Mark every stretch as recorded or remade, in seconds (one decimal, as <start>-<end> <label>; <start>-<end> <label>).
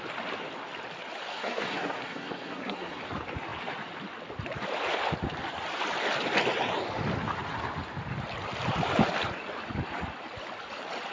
0.0-1.3 recorded; 1.3-3.0 remade; 3.0-11.1 recorded